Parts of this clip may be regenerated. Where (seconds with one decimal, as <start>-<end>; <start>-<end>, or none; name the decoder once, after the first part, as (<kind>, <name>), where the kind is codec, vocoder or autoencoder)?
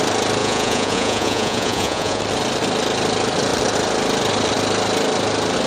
0.4-2.2 (vocoder, Vocos)